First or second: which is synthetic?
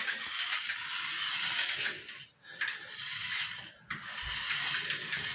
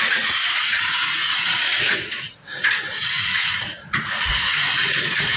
second